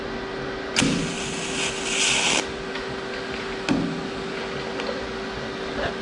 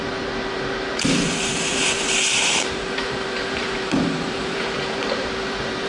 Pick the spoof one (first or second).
second